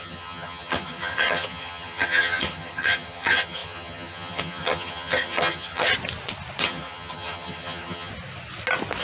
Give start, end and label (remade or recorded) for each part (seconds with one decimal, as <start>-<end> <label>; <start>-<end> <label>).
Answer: 0.0-5.9 remade; 5.9-6.6 recorded; 6.6-8.1 remade; 8.1-9.0 recorded